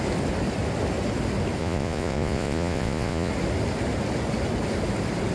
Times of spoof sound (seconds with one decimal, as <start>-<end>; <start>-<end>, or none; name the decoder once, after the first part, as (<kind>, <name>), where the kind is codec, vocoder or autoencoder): 1.6-3.3 (vocoder, Vocos)